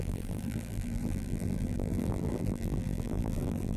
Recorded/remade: remade